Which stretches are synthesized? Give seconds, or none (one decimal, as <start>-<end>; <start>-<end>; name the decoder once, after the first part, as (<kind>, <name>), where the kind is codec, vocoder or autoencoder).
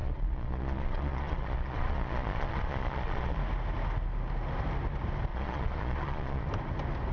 0.0-3.4 (vocoder, Vocos); 5.3-6.5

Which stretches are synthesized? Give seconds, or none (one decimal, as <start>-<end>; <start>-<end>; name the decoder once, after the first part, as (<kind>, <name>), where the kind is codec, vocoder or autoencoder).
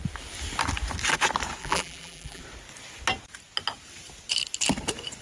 1.6-2.4 (vocoder, BigVGAN v2)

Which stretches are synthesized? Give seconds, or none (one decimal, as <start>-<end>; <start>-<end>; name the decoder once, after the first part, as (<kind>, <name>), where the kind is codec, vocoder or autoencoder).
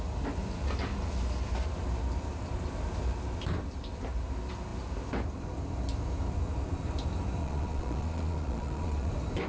7.4-9.1 (vocoder, Vocos)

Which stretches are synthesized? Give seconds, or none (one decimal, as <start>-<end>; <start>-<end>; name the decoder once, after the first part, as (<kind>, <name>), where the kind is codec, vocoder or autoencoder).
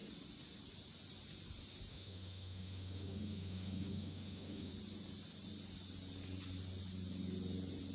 1.9-4.7 (autoencoder, DAC-VAE)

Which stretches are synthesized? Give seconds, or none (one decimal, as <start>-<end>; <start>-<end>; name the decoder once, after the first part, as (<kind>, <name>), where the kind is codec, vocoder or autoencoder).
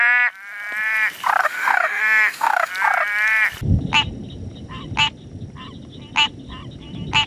1.4-2.7 (autoencoder, DAC-VAE)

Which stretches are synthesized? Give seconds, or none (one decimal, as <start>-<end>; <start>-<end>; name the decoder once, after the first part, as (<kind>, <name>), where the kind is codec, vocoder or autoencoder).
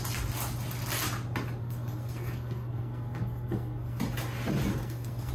1.6-4.0 (codec, SNAC); 4.7-5.3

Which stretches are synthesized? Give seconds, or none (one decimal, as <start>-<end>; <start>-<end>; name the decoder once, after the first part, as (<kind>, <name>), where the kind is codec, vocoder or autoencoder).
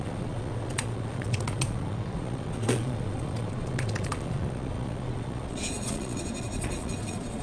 0.0-7.4 (vocoder, Vocos)